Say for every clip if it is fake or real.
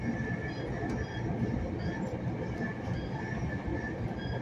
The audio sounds real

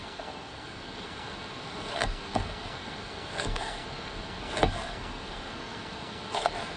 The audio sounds fake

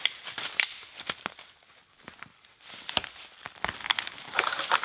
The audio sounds real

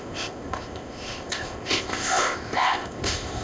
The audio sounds fake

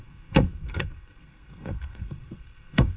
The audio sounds fake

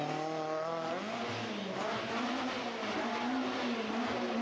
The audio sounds real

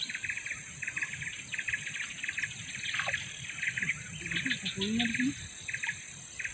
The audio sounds real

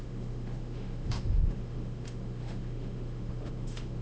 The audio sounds fake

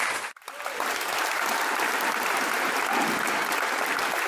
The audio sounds real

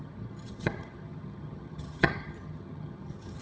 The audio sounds fake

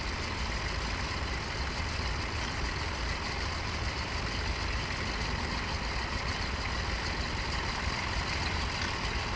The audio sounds real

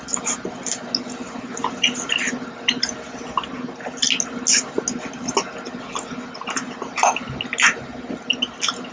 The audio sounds real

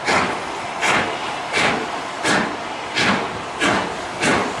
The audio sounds real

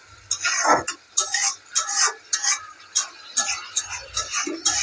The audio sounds real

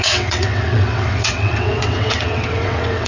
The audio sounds fake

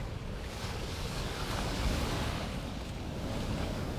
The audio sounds fake